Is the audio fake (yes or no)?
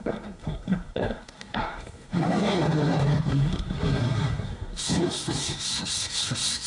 yes